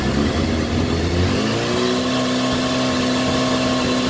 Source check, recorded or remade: recorded